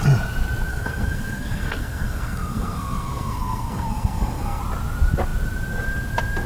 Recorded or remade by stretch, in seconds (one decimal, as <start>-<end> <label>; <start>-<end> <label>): 0.0-0.7 recorded; 0.7-4.6 remade; 4.6-6.5 recorded